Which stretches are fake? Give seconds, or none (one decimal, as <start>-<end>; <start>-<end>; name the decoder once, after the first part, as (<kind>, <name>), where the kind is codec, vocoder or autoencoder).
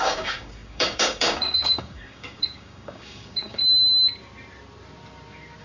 0.0-3.6 (codec, DAC)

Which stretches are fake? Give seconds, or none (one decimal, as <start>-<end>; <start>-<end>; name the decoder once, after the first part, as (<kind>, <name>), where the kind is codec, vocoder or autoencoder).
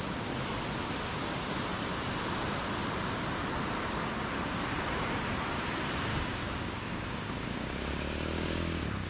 6.1-9.1 (codec, DAC)